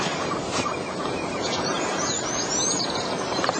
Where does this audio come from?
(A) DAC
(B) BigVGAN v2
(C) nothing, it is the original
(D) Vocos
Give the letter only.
B